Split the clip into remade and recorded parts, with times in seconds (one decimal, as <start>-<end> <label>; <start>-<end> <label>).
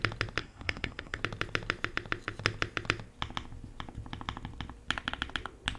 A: 0.0-0.4 recorded; 0.4-1.2 remade; 1.2-5.8 recorded